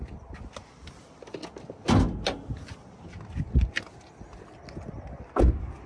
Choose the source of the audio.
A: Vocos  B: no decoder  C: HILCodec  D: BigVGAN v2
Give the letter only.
B